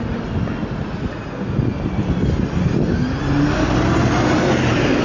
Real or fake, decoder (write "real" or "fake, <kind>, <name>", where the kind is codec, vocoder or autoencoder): real